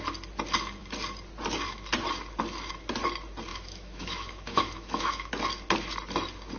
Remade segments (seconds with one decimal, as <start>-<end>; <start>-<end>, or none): 3.5-5.3